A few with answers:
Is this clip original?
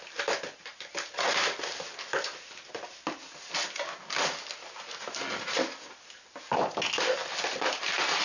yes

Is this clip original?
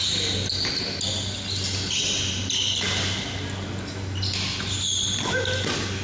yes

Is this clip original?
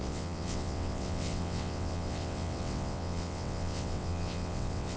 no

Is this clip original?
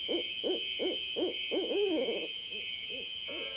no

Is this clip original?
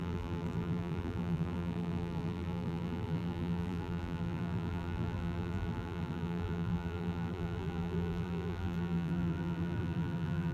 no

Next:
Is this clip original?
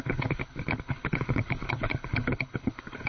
no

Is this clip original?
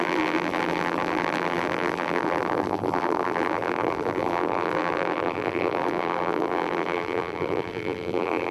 no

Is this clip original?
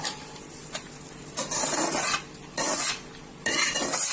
yes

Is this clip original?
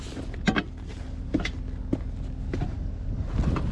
yes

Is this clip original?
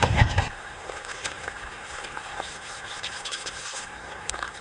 no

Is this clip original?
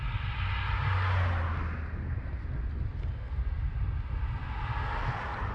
yes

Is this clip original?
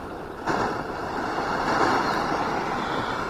yes